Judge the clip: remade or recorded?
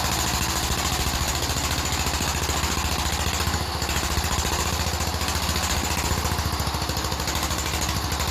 recorded